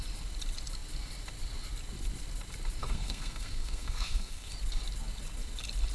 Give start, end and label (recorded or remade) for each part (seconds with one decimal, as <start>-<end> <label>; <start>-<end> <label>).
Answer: 0.0-2.8 recorded; 2.8-4.5 remade; 4.5-5.9 recorded